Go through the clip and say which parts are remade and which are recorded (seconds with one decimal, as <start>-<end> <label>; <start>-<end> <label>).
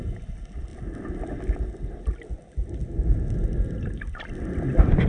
0.0-5.1 recorded